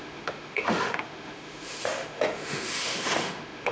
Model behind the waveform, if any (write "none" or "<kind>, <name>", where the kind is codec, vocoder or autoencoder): autoencoder, DAC-VAE